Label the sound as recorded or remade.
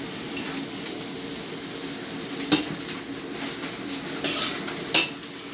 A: recorded